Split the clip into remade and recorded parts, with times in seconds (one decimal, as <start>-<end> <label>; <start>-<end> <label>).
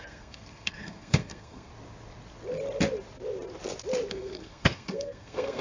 0.0-1.7 remade; 1.7-4.1 recorded; 4.1-5.6 remade